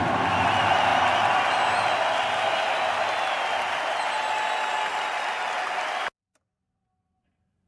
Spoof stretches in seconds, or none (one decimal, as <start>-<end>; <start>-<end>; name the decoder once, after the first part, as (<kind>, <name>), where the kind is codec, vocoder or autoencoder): none